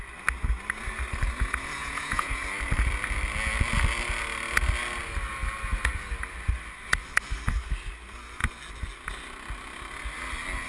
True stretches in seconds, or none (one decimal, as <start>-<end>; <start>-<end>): 0.0-1.8; 2.4-10.7